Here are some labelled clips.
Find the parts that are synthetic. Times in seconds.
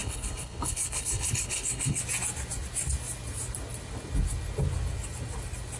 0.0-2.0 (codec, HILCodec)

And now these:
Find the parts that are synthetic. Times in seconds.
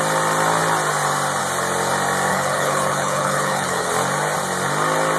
2.3-3.9 (codec, HILCodec)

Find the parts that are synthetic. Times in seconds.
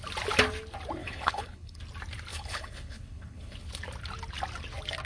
1.0-1.8 (codec, HILCodec); 2.3-3.7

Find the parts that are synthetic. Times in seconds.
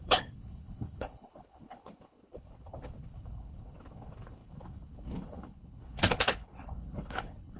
0.0-7.6 (codec, HILCodec)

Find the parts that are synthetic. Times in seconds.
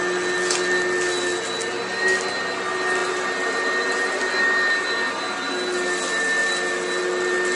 none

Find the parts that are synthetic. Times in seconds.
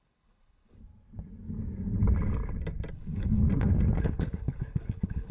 0.0-0.8 (codec, HILCodec); 2.9-3.4; 4.0-5.3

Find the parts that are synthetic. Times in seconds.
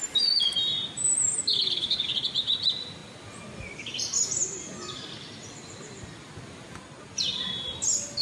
none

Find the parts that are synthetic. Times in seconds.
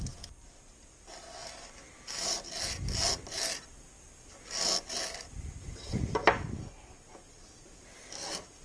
none